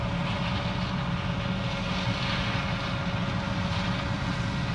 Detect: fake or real real